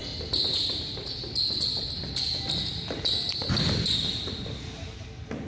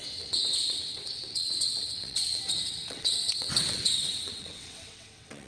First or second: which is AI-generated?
second